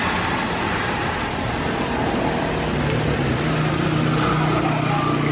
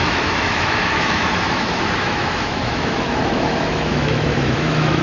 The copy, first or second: second